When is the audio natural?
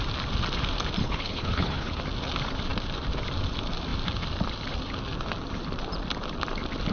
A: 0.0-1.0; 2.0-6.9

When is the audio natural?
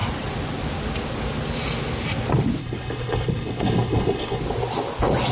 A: 0.0-2.6; 4.4-5.3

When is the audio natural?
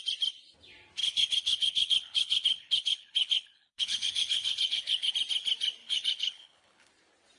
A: 0.0-1.0; 5.1-5.8; 6.9-7.4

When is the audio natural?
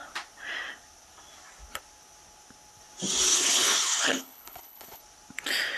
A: 0.0-3.3; 5.0-5.8